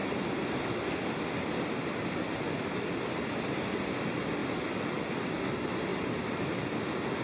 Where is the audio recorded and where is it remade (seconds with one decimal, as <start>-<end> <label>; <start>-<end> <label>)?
0.0-5.9 recorded; 5.9-6.5 remade; 6.5-7.2 recorded